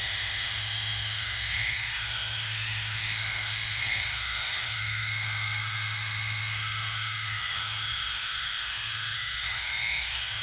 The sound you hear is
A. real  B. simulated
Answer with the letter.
B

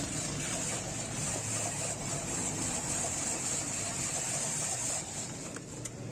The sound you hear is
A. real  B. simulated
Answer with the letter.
A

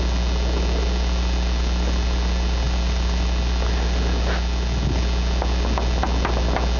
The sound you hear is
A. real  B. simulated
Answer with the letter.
A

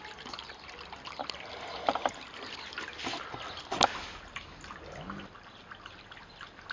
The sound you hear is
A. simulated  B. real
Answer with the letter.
B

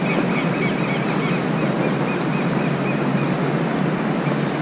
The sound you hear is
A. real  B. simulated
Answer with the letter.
A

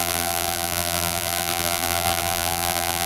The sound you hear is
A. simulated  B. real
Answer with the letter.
A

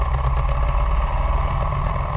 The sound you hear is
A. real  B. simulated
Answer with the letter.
A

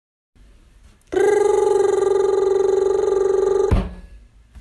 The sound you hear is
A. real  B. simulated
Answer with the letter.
A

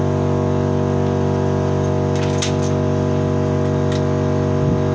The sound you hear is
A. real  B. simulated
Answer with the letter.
A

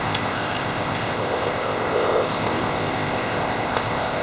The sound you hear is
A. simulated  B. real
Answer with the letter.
A